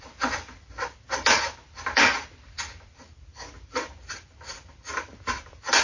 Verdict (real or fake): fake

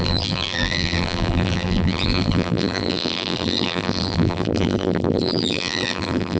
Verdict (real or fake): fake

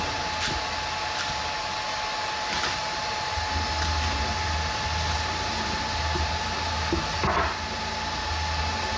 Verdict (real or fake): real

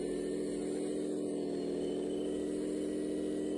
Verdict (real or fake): real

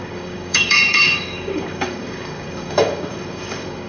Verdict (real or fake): fake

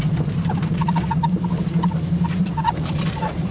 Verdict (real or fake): fake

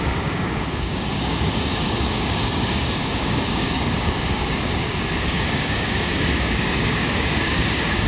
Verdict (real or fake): fake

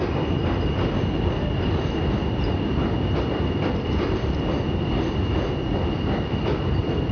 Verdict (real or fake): real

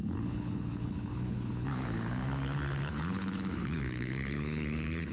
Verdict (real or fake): fake